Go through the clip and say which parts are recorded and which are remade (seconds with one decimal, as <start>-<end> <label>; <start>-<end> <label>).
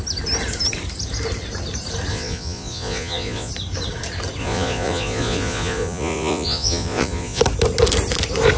0.0-2.1 recorded; 2.1-3.5 remade; 3.5-4.4 recorded; 4.4-7.4 remade; 7.4-8.6 recorded